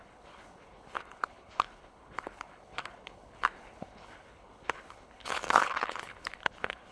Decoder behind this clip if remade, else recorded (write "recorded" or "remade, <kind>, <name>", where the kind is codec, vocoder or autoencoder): remade, codec, HILCodec